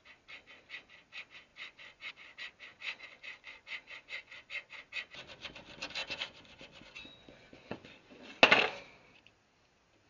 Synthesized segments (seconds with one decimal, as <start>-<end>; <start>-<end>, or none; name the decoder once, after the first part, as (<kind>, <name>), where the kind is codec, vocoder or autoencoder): 1.5-2.1 (vocoder, Vocos); 2.8-4.7; 6.0-8.3